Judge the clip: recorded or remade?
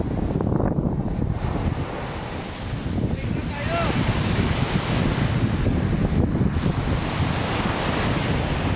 recorded